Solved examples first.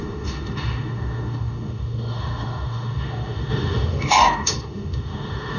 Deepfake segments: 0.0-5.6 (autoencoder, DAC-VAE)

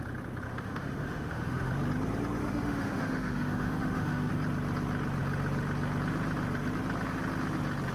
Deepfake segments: 0.5-1.7 (autoencoder, DAC-VAE); 2.4-4.3

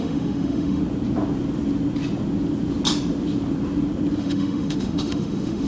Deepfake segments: 0.0-0.8 (autoencoder, DAC-VAE); 4.2-5.7